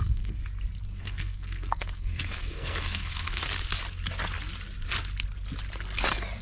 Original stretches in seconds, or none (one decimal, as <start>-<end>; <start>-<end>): 0.4-1.0; 3.4-6.4